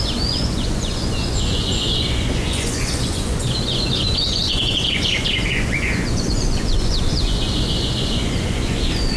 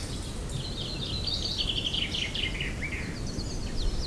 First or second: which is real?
second